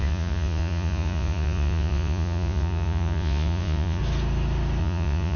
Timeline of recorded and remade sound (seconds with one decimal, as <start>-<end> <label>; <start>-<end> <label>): 0.0-4.0 remade; 4.0-4.8 recorded; 4.8-5.4 remade